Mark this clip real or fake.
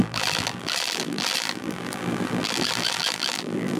fake